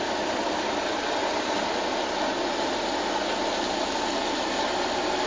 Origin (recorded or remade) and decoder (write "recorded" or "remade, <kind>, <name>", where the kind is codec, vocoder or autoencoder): recorded